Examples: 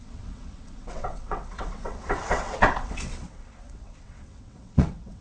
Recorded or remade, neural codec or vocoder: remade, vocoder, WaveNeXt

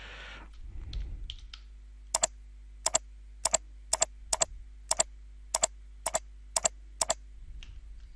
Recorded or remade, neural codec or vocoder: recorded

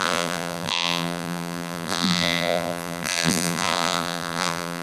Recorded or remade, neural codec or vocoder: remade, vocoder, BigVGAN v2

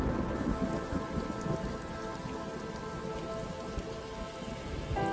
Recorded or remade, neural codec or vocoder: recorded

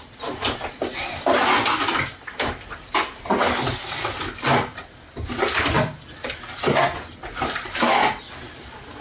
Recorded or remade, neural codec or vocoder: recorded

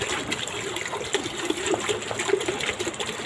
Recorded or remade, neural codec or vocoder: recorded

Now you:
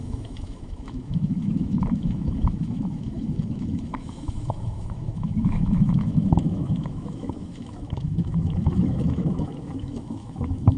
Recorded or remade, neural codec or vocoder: remade, autoencoder, DAC-VAE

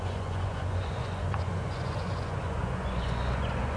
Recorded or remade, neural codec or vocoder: remade, vocoder, Vocos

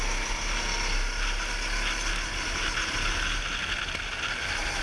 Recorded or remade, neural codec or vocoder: recorded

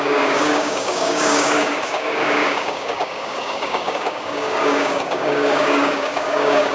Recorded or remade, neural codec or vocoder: remade, codec, DAC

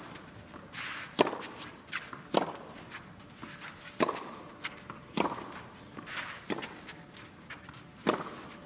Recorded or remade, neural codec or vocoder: recorded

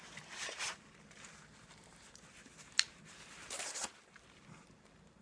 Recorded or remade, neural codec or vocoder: remade, vocoder, BigVGAN v2